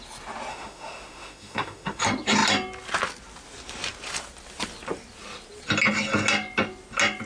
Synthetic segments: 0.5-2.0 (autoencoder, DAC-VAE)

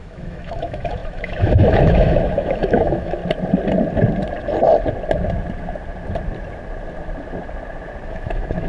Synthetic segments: 0.0-3.2 (autoencoder, DAC-VAE); 8.1-8.7

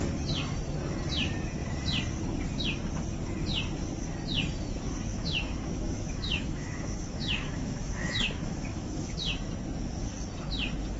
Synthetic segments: 5.1-9.1 (autoencoder, DAC-VAE)

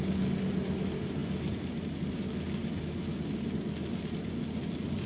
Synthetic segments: none

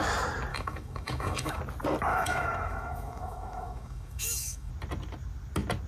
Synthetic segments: 0.5-1.6 (autoencoder, DAC-VAE); 2.1-4.7